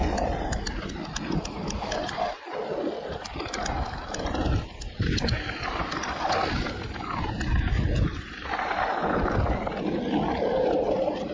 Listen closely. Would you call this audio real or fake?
real